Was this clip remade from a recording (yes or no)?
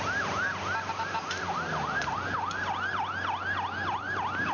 no